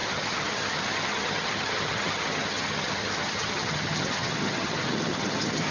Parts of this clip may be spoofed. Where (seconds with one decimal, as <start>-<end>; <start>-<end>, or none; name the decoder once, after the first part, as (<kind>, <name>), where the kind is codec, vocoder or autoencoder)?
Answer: 0.0-5.7 (vocoder, HiFi-GAN)